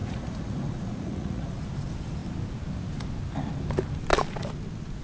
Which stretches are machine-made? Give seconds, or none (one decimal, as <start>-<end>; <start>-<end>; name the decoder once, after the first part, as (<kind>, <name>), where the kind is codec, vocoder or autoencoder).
0.0-1.6 (vocoder, Vocos)

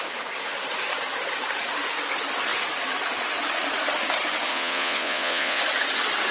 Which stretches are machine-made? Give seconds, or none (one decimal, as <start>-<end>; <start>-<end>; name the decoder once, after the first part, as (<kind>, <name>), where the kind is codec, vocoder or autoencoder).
4.5-5.6 (vocoder, Vocos)